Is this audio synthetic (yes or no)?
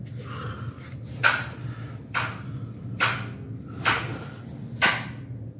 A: no